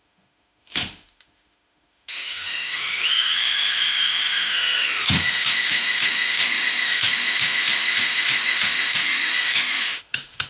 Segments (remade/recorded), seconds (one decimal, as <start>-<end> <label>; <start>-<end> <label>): 0.0-10.5 remade